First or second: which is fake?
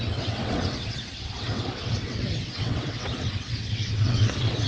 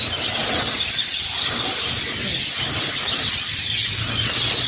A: first